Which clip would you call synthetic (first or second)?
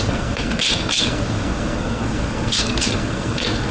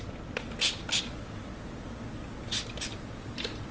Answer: first